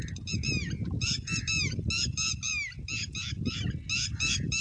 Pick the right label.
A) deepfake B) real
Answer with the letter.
B